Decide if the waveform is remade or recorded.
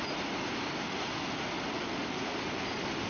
recorded